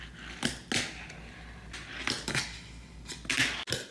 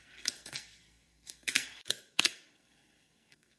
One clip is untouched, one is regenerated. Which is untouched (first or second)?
first